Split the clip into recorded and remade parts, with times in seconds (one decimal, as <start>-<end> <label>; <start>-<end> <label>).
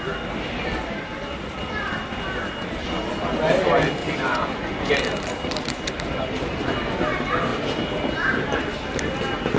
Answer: 0.0-4.0 recorded; 4.0-4.9 remade; 4.9-9.6 recorded